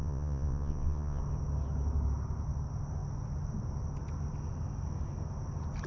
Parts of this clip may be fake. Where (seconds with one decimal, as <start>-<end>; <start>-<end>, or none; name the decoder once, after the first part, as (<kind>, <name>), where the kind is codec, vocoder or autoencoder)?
0.0-1.2 (vocoder, Vocos)